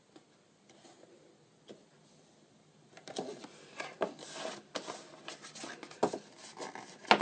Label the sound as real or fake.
real